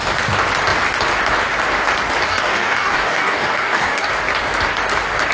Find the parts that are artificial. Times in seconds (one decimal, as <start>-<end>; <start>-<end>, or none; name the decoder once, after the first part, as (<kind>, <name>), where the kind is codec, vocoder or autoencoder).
2.3-4.1 (codec, DAC)